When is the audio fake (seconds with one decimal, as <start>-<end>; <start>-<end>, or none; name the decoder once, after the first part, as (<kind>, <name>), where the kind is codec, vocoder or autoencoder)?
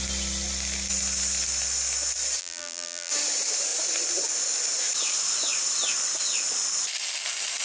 2.4-3.1 (vocoder, BigVGAN v2)